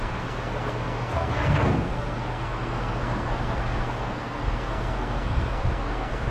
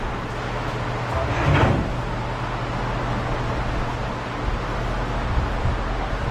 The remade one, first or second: first